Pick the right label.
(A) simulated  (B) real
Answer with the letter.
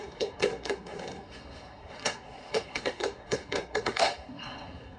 A